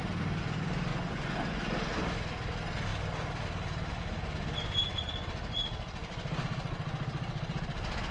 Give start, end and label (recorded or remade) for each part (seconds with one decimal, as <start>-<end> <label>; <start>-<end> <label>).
0.0-0.9 recorded; 0.9-1.6 remade; 1.6-8.1 recorded